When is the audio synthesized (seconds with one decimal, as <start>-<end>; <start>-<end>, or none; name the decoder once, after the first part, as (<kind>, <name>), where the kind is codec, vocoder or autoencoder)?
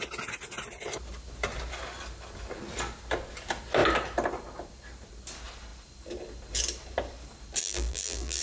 7.6-8.4 (vocoder, BigVGAN v2)